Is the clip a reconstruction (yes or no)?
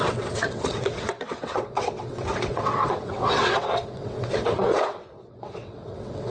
yes